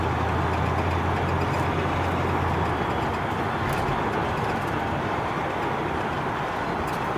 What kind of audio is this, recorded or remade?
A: recorded